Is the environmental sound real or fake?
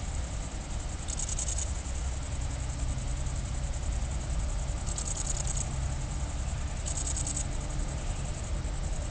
real